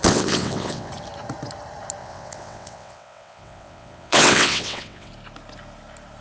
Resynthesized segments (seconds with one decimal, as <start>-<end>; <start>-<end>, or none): 0.0-0.9; 2.0-5.1